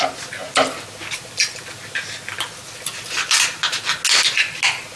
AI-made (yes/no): no